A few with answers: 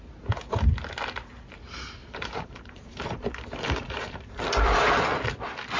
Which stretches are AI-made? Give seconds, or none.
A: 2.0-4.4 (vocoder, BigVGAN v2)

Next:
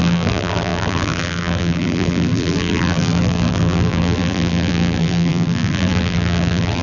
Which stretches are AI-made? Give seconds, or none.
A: 0.0-6.8 (vocoder, BigVGAN v2)

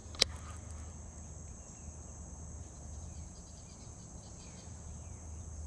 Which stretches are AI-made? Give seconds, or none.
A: 2.6-5.7 (vocoder, BigVGAN v2)